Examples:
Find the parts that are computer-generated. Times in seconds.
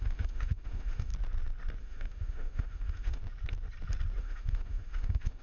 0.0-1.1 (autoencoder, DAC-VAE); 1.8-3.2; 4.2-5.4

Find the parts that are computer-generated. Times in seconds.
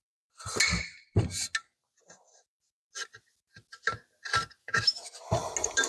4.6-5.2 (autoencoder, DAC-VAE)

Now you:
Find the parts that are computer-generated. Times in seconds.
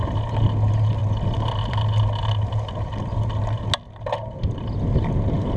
none